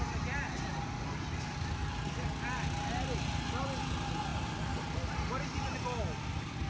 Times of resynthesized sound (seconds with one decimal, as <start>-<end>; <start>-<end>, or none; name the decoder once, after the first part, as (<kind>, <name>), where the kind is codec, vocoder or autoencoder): none